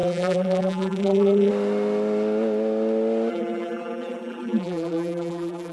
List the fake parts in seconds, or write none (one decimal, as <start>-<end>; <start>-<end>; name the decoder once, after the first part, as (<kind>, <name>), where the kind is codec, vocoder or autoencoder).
0.0-1.5 (vocoder, BigVGAN v2); 3.3-5.7